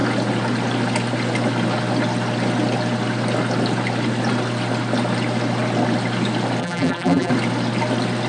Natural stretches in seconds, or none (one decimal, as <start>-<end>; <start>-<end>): 0.0-6.6; 7.3-8.3